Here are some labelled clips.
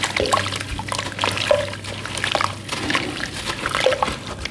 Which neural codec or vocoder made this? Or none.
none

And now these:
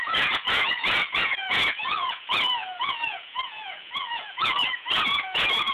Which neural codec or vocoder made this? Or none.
vocoder, Vocos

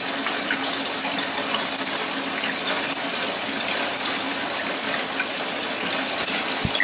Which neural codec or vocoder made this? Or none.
none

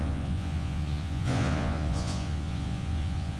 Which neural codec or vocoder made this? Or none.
vocoder, Vocos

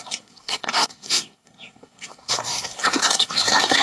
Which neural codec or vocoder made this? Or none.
codec, SNAC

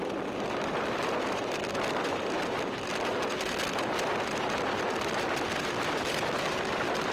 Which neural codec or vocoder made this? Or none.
vocoder, BigVGAN v2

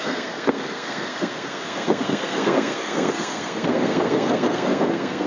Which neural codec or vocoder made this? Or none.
codec, SNAC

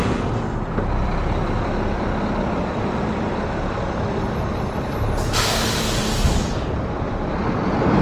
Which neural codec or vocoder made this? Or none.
none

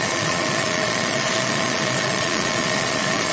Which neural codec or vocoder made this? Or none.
vocoder, Vocos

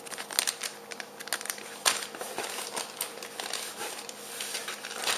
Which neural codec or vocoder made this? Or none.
none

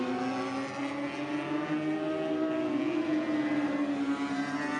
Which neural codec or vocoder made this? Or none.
none